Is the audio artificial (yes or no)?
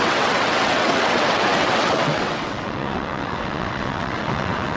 yes